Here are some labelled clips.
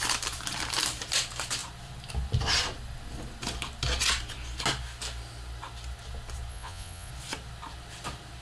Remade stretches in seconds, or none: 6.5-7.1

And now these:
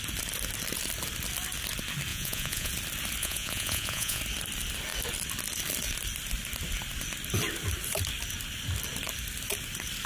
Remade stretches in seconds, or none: 2.1-2.7; 3.2-4.2

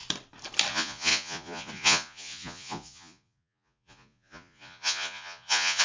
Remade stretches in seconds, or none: 0.7-5.8

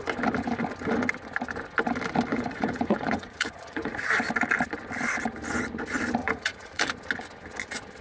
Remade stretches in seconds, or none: 2.3-4.1; 6.2-6.8

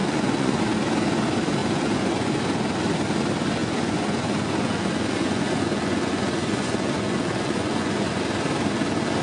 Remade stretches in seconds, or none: 0.0-0.6; 1.6-2.3; 3.6-8.2

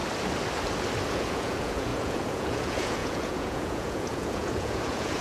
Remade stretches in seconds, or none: 1.1-5.2

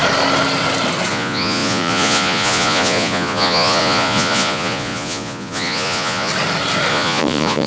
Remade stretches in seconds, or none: 1.1-6.3; 6.9-7.7

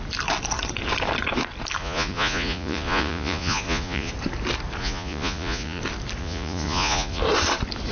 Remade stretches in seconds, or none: 1.8-4.1; 4.8-5.8; 6.2-7.2